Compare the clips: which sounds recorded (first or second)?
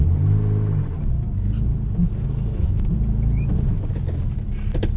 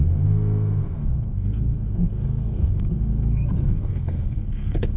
first